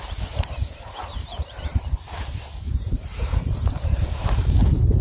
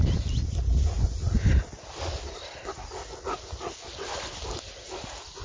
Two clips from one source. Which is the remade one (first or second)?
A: first